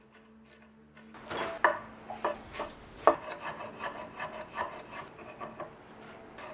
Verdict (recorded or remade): recorded